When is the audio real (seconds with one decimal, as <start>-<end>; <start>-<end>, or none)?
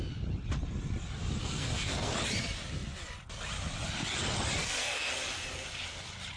0.0-1.4; 2.1-4.6; 5.1-6.4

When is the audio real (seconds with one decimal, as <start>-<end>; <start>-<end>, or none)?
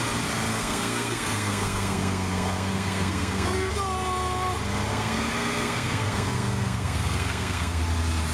0.0-0.5; 3.7-4.9; 7.8-8.3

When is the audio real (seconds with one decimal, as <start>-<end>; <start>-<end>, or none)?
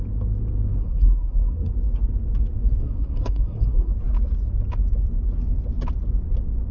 0.0-0.8; 1.7-2.8; 3.9-6.7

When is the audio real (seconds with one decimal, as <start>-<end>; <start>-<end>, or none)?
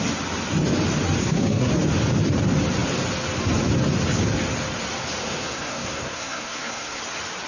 0.0-1.2; 1.7-5.2; 7.0-7.5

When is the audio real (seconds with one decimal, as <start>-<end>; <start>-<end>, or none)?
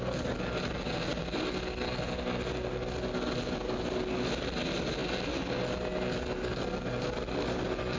0.0-8.0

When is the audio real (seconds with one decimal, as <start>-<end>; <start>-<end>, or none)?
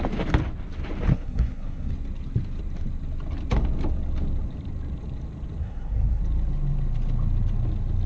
0.0-1.1; 1.9-5.6; 6.2-8.1